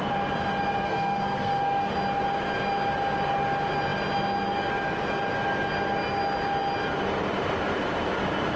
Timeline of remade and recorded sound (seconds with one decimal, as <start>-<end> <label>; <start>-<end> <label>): 0.0-0.8 recorded; 0.8-1.9 remade; 1.9-8.6 recorded